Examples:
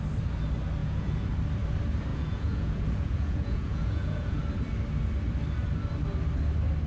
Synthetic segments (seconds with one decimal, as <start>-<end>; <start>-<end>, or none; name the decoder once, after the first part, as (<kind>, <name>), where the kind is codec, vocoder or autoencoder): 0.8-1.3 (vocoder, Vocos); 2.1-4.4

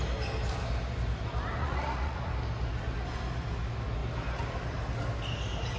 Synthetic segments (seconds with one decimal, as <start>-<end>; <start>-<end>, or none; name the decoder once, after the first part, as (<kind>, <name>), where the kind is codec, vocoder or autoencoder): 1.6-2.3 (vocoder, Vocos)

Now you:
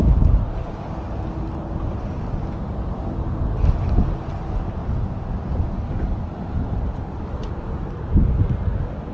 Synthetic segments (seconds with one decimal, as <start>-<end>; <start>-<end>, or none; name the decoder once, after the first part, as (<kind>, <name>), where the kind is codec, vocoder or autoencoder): none